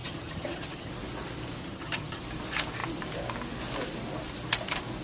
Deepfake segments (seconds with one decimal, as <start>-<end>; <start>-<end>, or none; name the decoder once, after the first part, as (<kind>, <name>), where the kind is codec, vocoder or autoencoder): 0.0-0.9 (vocoder, HiFi-GAN); 1.6-2.2